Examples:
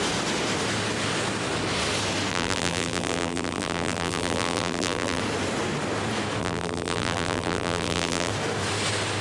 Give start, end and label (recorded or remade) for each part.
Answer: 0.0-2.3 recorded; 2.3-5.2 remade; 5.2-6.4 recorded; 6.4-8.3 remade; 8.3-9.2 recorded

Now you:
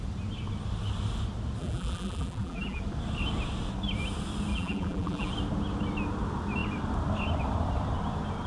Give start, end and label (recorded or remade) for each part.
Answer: 0.0-1.6 recorded; 1.6-2.8 remade; 2.8-4.5 recorded; 4.5-5.3 remade; 5.3-8.5 recorded

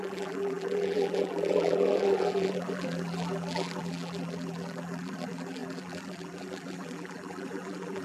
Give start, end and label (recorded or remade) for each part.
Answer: 0.0-8.0 remade

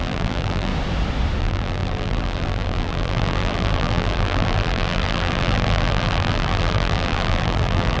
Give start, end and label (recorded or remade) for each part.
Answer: 0.0-0.7 remade; 0.7-1.4 recorded; 1.4-8.0 remade

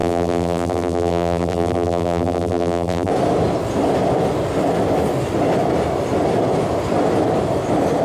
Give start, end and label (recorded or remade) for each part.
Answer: 0.0-3.1 remade; 3.1-8.0 recorded